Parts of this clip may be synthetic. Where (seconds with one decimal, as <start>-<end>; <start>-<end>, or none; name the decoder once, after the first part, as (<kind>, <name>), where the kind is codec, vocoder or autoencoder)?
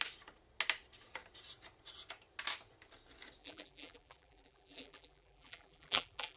3.4-6.4 (vocoder, BigVGAN v2)